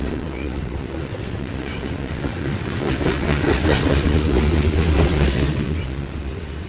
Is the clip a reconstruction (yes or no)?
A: yes